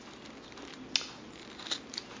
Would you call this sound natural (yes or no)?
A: yes